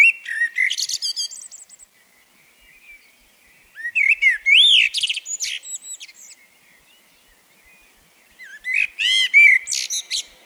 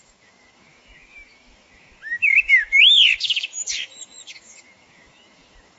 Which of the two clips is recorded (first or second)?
first